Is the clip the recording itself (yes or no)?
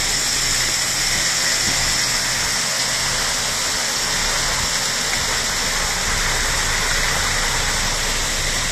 yes